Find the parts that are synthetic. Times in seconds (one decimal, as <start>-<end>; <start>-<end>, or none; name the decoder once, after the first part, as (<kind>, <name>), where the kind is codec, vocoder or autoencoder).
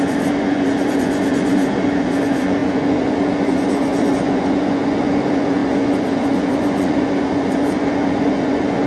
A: 0.0-8.9 (vocoder, Vocos)